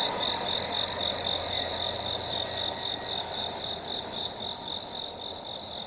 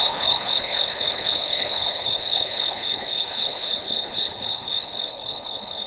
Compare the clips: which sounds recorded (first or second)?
first